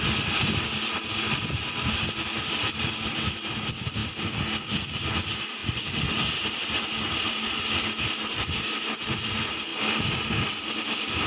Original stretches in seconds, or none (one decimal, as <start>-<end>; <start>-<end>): 0.0-11.3